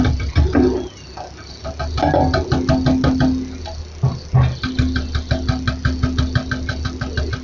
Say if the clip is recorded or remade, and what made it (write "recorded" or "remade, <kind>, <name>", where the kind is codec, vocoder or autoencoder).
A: recorded